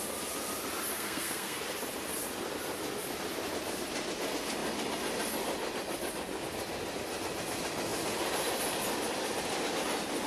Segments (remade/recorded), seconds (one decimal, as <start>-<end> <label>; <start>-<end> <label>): 0.0-0.9 recorded; 0.9-1.6 remade; 1.6-10.3 recorded